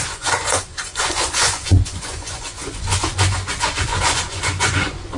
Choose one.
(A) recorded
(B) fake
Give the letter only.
B